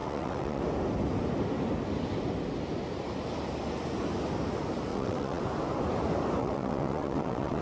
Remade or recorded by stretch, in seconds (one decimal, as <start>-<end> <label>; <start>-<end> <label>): 0.0-0.6 remade; 0.6-4.9 recorded; 4.9-5.4 remade; 5.4-6.4 recorded; 6.4-7.6 remade